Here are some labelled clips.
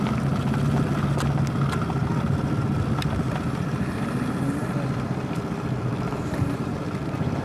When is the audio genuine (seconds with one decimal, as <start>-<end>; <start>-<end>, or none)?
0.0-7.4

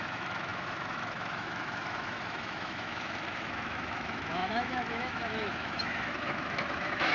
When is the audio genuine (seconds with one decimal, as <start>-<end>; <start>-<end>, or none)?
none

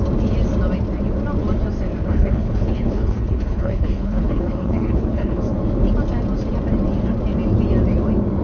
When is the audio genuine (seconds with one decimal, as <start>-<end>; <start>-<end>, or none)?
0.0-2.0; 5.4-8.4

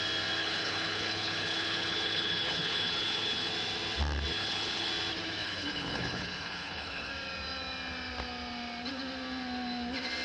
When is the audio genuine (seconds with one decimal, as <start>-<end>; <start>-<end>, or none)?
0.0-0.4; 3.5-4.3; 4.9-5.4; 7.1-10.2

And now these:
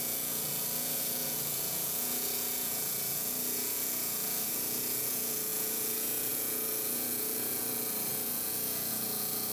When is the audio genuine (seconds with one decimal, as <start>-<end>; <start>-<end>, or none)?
none

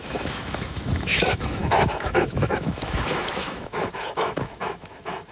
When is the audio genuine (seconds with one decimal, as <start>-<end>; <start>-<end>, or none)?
none